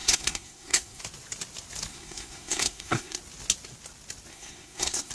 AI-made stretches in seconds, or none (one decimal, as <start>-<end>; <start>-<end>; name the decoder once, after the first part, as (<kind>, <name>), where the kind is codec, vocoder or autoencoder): 0.0-1.0 (codec, SNAC); 1.9-3.2; 4.3-5.1